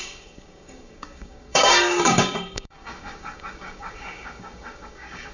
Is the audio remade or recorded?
remade